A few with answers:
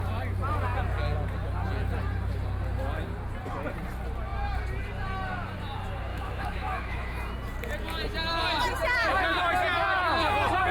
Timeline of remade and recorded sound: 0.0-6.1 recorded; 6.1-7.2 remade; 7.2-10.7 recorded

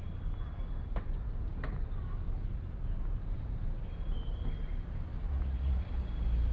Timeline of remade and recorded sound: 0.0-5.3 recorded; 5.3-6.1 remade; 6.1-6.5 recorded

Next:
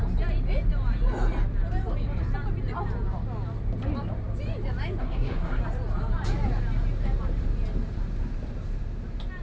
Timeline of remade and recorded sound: 0.0-5.0 recorded; 5.0-5.6 remade; 5.6-9.4 recorded

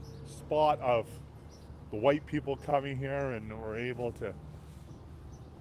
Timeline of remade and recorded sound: 0.0-2.7 recorded; 2.7-5.0 remade; 5.0-5.6 recorded